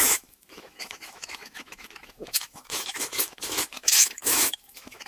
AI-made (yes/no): yes